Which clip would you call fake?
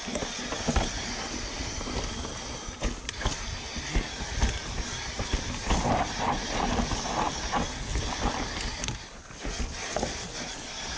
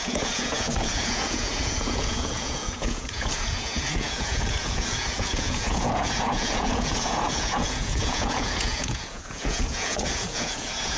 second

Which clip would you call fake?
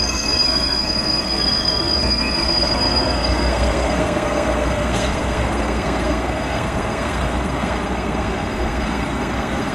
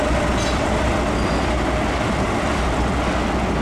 first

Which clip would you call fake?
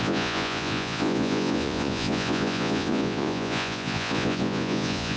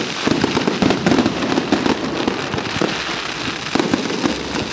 first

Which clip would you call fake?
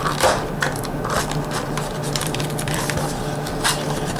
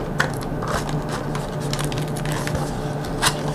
first